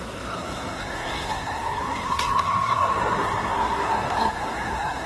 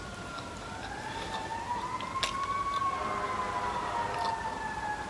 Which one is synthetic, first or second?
first